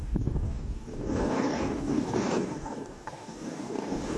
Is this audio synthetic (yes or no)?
yes